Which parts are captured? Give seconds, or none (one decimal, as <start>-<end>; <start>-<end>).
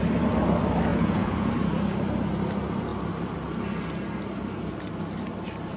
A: 0.0-0.9; 1.5-5.8